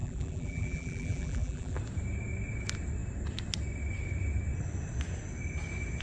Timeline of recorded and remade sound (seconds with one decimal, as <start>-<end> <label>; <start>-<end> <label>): 0.0-1.8 remade; 1.8-6.0 recorded